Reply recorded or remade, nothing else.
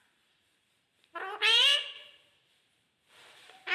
remade